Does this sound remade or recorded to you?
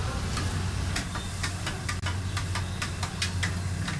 recorded